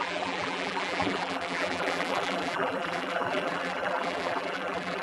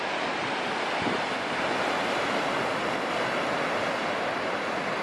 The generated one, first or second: first